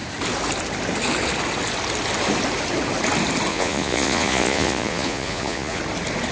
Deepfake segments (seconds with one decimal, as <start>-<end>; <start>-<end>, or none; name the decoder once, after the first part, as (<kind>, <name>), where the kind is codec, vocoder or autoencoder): 3.5-5.8 (vocoder, Vocos)